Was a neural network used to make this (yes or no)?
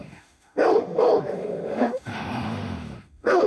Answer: yes